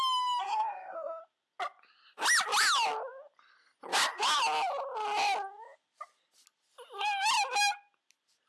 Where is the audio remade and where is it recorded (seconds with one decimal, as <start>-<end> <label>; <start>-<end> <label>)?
0.0-0.4 recorded; 0.4-1.2 remade; 1.2-8.5 recorded